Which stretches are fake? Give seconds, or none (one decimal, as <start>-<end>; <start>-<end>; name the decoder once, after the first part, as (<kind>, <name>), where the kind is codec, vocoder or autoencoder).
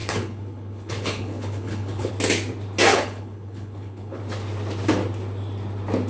0.0-2.1 (codec, HILCodec); 2.9-4.2